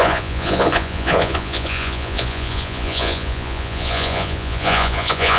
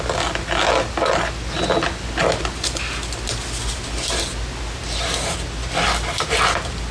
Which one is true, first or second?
second